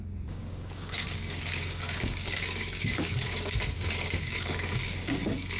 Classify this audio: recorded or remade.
remade